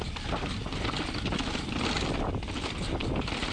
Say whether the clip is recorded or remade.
recorded